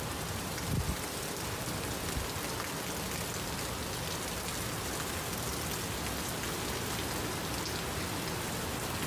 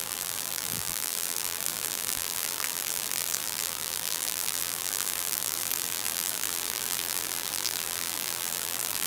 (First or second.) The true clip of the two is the first